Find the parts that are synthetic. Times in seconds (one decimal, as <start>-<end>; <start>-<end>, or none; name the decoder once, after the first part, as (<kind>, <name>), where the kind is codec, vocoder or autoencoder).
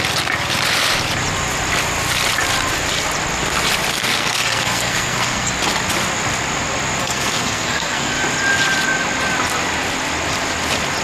3.9-5.5 (codec, SNAC); 7.0-8.1